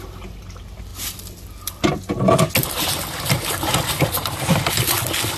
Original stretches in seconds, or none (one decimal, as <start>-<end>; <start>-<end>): 0.0-5.4